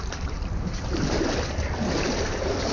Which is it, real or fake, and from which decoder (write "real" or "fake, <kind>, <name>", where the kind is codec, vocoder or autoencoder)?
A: real